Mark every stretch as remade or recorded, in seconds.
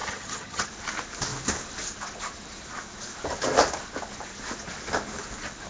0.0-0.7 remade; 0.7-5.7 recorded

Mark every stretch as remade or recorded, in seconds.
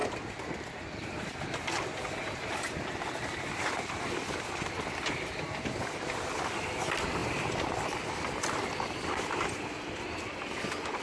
0.0-11.0 recorded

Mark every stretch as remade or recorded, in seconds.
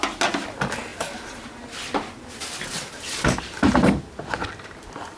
0.0-5.2 recorded